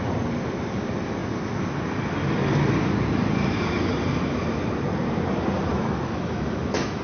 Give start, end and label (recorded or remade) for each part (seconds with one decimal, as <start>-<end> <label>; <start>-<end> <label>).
0.0-5.7 recorded; 5.7-7.0 remade